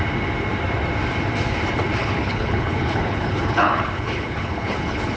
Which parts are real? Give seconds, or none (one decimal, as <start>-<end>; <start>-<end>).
0.0-2.0